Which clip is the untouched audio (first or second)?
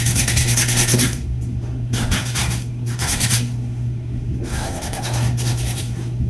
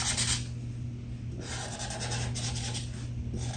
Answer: second